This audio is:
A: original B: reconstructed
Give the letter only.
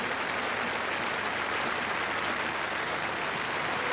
A